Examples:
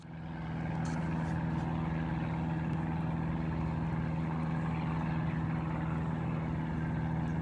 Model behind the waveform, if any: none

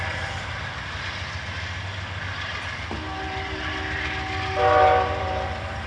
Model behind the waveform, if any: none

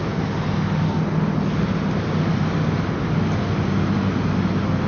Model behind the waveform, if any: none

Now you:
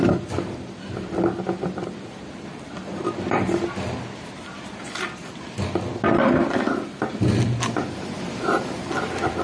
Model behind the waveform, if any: none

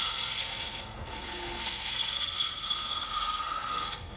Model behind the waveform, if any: codec, SNAC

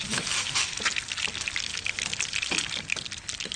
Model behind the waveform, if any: none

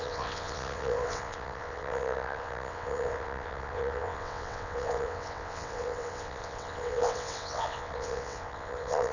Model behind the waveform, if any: vocoder, WaveNeXt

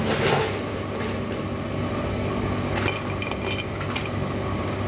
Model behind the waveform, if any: none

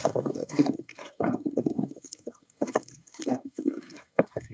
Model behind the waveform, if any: codec, SNAC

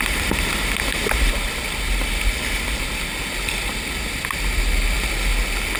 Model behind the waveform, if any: none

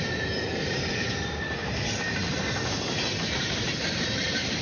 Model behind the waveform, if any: vocoder, BigVGAN v2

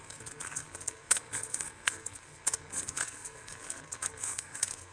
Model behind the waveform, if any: codec, SNAC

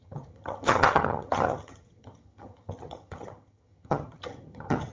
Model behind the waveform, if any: vocoder, HiFi-GAN